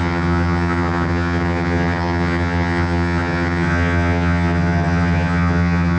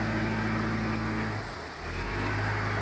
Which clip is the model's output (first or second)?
first